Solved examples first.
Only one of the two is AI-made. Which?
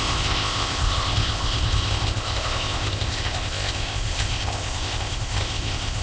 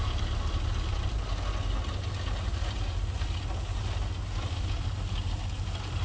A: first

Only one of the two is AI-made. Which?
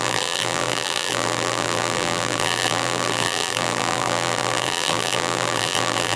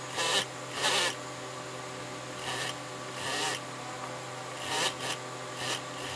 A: first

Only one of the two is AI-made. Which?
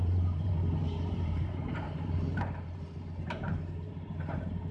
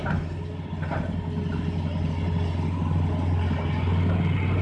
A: first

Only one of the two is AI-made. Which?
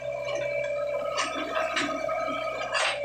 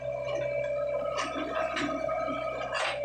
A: first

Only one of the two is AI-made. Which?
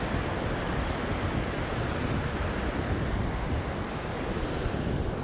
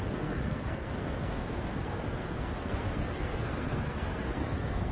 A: second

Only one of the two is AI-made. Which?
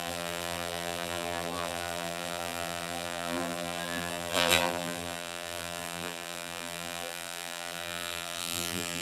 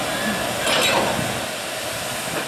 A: first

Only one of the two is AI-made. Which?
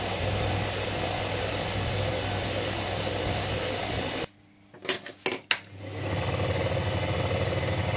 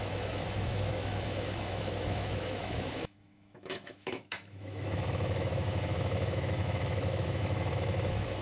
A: second